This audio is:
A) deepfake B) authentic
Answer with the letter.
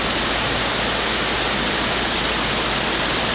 B